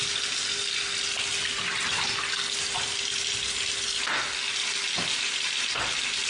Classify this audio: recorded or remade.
recorded